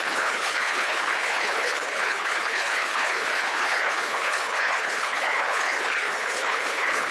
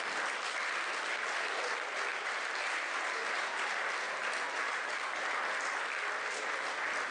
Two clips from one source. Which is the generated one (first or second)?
first